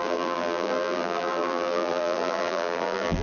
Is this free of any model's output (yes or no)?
no